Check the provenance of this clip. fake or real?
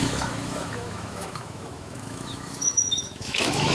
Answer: fake